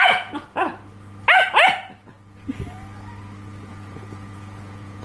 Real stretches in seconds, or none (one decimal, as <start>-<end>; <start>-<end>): 0.7-3.7